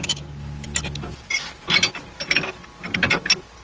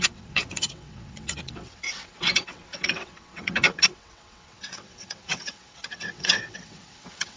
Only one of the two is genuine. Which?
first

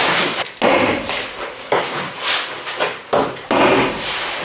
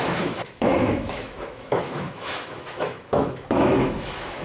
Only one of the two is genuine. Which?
first